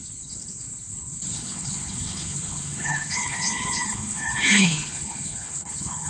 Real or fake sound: fake